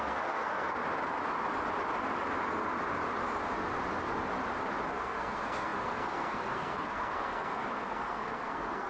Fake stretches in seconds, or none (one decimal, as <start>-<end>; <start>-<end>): 0.0-0.8; 4.9-8.9